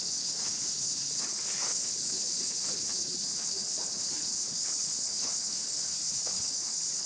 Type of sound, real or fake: fake